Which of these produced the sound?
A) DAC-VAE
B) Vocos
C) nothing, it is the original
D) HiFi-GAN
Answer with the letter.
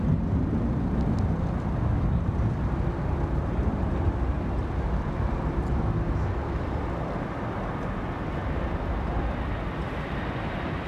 C